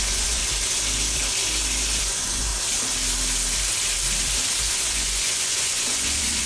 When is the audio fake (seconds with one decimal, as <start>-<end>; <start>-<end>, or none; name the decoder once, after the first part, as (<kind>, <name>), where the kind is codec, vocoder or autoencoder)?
0.0-0.4 (vocoder, Vocos); 2.0-2.5; 4.7-6.5